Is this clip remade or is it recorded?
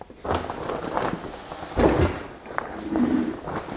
recorded